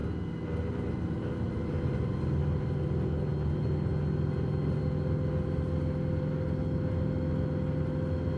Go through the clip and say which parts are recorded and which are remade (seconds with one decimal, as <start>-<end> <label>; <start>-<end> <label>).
0.0-8.4 recorded